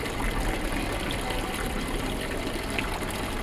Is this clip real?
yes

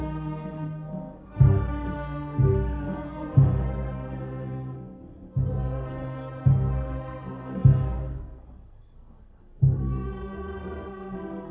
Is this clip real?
no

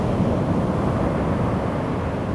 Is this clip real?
yes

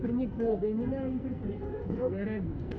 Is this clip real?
no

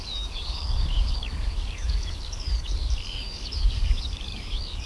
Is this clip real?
no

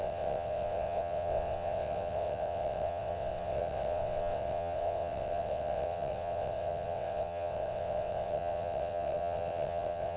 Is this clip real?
no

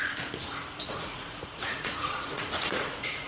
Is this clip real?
no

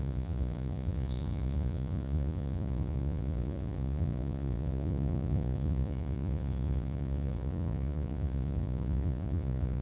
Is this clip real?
no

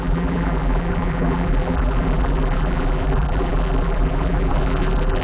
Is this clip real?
no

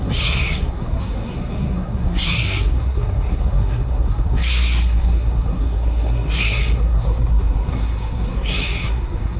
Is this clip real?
no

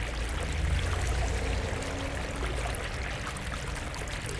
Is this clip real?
yes